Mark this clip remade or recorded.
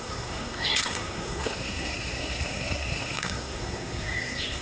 remade